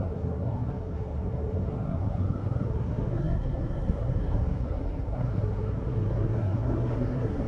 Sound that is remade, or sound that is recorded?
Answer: remade